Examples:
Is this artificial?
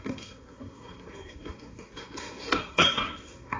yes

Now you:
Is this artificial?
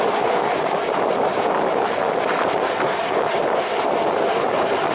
no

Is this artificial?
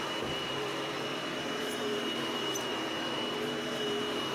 yes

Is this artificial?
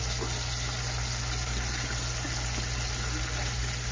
no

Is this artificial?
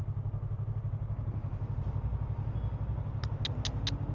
no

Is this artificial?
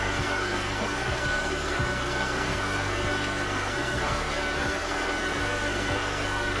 yes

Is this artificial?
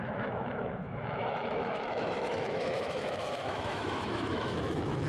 yes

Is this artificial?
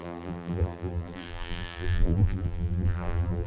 yes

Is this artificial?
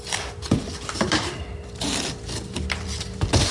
yes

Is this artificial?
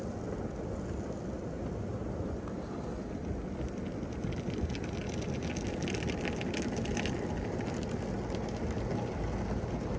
no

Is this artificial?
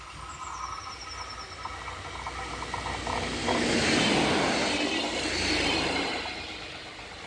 no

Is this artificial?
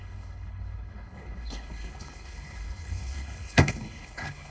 yes